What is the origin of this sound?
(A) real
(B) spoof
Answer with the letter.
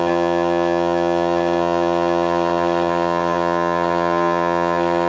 B